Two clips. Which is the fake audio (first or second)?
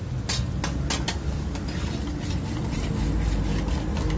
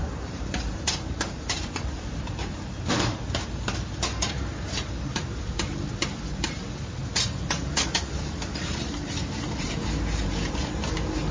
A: second